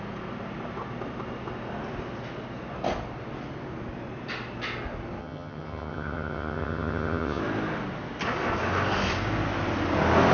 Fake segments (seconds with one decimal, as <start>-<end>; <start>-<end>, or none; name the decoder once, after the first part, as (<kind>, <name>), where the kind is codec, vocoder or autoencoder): 5.2-7.4 (vocoder, HiFi-GAN)